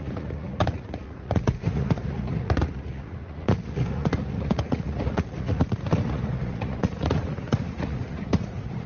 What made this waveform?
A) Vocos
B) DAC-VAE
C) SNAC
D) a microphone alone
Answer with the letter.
A